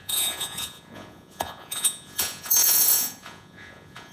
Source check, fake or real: fake